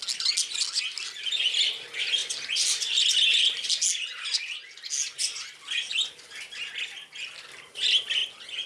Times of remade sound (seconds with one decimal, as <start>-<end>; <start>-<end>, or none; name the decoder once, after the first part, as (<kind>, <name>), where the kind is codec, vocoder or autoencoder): none